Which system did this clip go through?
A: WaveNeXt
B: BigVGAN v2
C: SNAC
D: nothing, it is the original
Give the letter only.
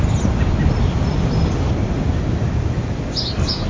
D